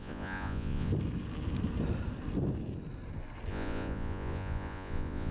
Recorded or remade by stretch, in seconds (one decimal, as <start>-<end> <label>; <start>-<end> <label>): 0.0-0.9 remade; 0.9-3.5 recorded; 3.5-5.3 remade